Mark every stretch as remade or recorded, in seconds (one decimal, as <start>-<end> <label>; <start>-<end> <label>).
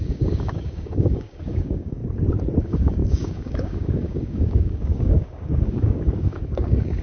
0.0-2.0 remade; 2.0-2.6 recorded; 2.6-7.0 remade